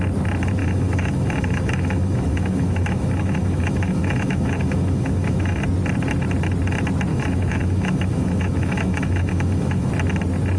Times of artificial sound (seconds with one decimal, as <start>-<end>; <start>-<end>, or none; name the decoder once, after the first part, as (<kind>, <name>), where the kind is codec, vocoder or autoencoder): 0.6-5.6 (autoencoder, DAC-VAE); 7.1-9.9